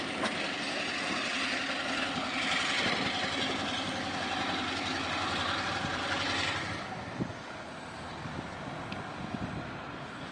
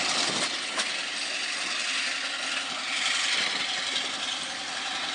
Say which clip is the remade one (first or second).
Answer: first